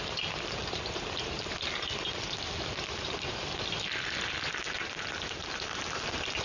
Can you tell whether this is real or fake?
real